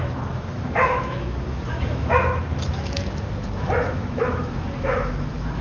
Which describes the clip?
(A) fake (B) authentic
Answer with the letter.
A